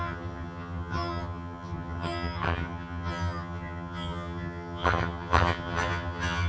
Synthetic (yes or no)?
yes